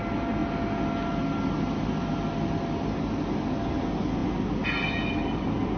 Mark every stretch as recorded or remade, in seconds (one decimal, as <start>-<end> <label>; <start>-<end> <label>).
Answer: 0.0-5.8 recorded